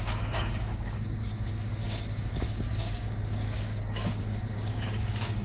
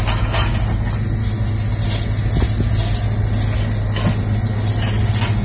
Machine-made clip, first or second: first